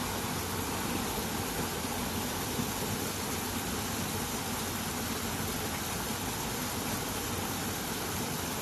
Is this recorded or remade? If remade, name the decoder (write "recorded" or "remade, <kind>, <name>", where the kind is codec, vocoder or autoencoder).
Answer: recorded